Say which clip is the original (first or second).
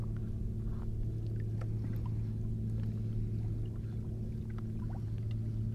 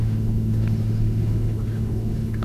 first